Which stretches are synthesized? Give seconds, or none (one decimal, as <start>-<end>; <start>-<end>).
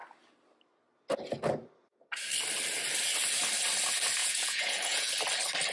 4.2-5.1